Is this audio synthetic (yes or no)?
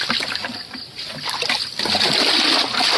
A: no